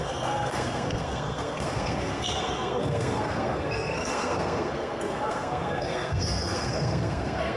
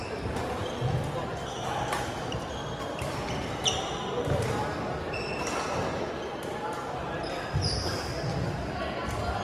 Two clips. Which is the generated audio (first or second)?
first